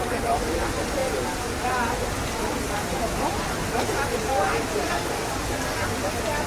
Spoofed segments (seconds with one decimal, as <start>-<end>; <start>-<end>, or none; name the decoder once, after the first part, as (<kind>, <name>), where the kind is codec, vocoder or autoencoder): none